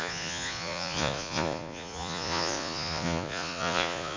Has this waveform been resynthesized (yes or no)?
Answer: yes